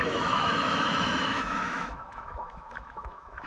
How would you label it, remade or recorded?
remade